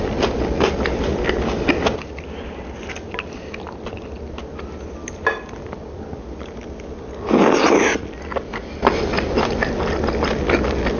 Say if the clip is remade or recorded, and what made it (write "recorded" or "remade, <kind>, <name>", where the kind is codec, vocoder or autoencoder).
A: recorded